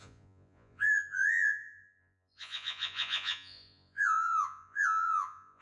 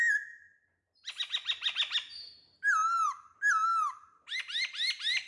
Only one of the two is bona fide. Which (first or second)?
second